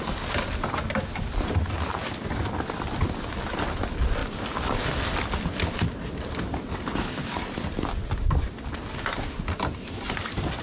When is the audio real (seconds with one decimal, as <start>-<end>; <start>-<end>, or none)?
0.0-10.6